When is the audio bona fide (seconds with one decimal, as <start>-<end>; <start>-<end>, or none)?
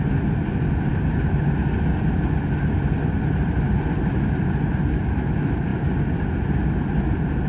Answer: 0.0-7.5